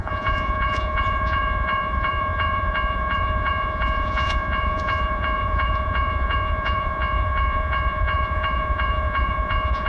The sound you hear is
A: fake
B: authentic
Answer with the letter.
A